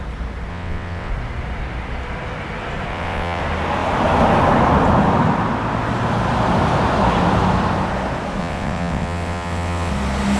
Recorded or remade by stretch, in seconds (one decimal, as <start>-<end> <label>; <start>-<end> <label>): 0.0-0.5 recorded; 0.5-1.1 remade; 1.1-2.9 recorded; 2.9-3.4 remade; 3.4-8.4 recorded; 8.4-9.9 remade; 9.9-10.4 recorded

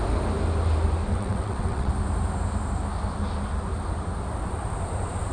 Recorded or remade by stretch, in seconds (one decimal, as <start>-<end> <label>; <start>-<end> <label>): 0.0-1.1 recorded; 1.1-1.9 remade; 1.9-5.3 recorded

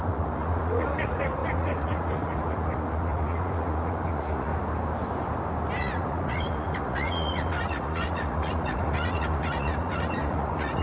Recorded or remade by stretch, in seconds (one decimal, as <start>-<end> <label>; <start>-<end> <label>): 0.0-4.5 remade; 4.5-5.8 recorded; 5.8-10.8 remade

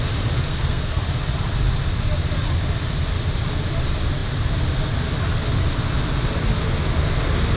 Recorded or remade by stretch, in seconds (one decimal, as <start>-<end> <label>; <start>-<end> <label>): 0.0-0.5 recorded; 0.5-1.0 remade; 1.0-7.6 recorded

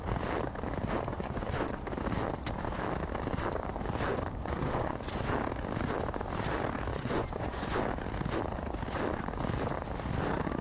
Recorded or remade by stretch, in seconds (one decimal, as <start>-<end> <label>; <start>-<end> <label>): 0.0-1.1 recorded; 1.1-1.7 remade; 1.7-4.4 recorded; 4.4-5.3 remade; 5.3-6.9 recorded; 6.9-7.8 remade; 7.8-10.6 recorded

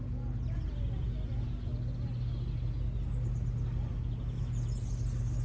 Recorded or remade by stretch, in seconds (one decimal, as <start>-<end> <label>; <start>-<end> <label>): 0.0-5.4 recorded

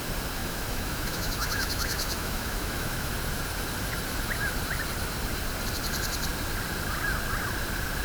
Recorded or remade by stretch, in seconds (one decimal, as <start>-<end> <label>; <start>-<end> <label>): 0.0-0.4 recorded; 0.4-3.1 remade; 3.1-8.0 recorded